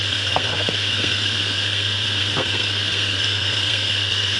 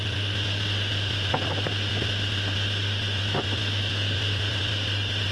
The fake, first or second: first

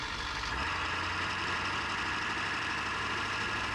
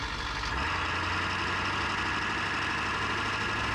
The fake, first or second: first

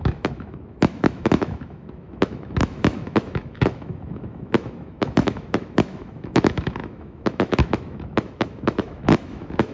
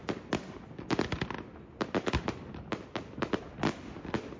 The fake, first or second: first